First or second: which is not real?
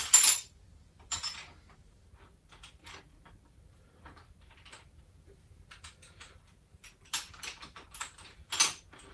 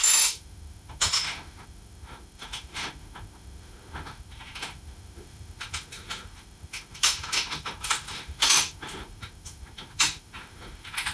second